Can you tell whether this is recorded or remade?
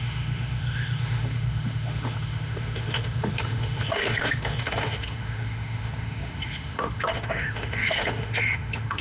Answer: remade